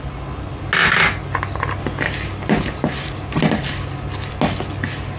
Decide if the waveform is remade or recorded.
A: recorded